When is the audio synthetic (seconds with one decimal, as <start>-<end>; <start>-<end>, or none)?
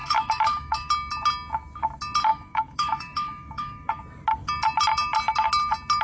0.0-0.9; 2.3-4.0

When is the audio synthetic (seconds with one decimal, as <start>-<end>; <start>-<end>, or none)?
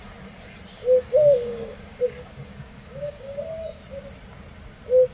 0.7-3.8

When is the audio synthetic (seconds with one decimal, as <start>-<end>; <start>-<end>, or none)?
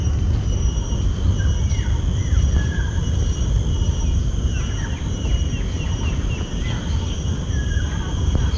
2.3-3.0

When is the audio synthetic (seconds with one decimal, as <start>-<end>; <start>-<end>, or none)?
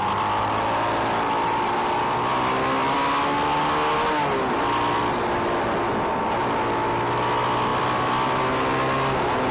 2.3-3.2; 7.7-8.4